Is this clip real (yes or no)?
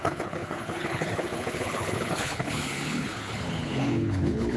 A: no